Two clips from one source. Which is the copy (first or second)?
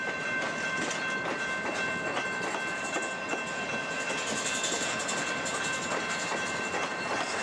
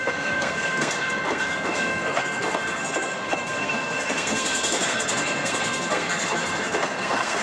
second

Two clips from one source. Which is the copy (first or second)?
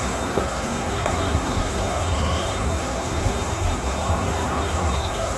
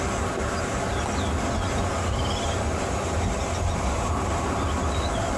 first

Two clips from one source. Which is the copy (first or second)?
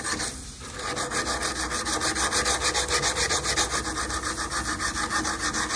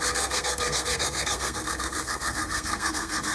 second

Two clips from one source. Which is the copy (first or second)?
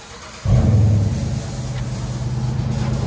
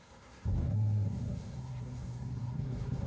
second